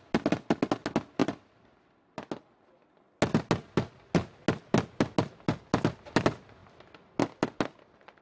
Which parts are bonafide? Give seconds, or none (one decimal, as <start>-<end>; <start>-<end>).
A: 0.0-8.2